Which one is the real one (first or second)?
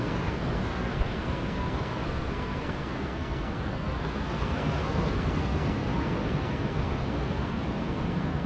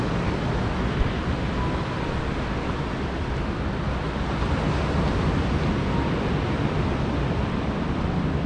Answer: second